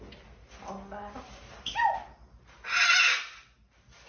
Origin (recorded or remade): recorded